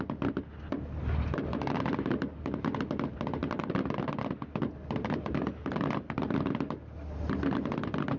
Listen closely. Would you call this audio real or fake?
real